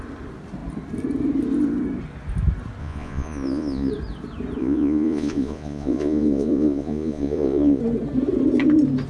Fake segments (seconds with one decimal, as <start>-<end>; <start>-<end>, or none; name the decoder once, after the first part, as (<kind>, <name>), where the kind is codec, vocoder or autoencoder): 2.8-3.9 (vocoder, Vocos); 4.6-7.8